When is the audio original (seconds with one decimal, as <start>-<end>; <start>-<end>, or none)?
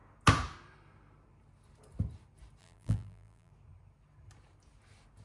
0.0-2.6; 3.5-5.2